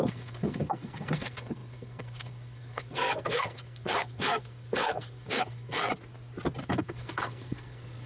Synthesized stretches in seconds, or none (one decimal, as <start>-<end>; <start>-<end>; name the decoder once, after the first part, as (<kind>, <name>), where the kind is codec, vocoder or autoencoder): 0.0-5.9 (codec, SNAC); 6.6-8.1